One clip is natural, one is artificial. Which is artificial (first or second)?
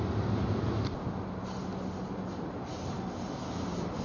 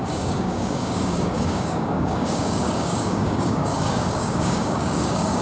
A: second